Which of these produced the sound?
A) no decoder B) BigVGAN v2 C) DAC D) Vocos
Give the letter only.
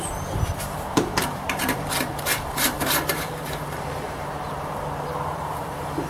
B